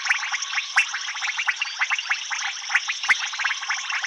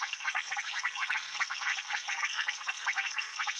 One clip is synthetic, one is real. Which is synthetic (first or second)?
second